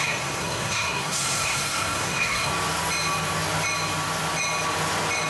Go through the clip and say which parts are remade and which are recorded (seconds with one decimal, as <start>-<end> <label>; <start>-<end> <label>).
0.0-2.5 remade; 2.5-5.3 recorded